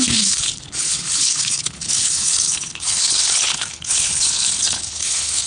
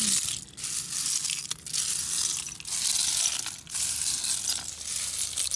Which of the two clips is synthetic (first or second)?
first